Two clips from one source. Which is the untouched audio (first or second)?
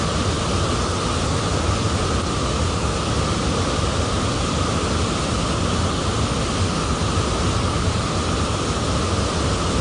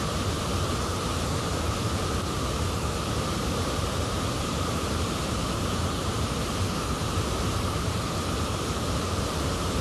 first